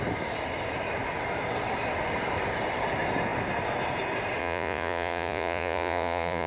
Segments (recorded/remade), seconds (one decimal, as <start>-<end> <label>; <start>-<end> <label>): 0.0-4.4 recorded; 4.4-6.5 remade